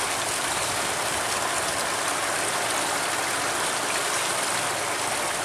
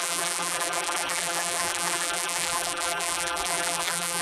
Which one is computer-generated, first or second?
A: second